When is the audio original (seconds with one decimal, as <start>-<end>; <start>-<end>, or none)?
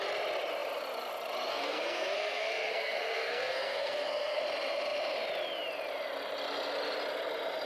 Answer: 0.0-1.5; 4.4-7.7